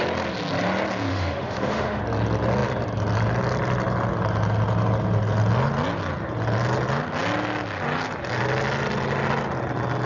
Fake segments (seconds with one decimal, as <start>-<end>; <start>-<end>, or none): 1.1-2.0